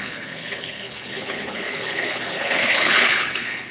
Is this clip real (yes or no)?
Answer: no